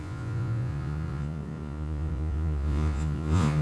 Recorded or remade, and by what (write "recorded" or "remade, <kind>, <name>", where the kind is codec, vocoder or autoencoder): remade, vocoder, Vocos